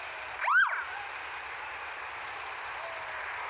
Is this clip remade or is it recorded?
recorded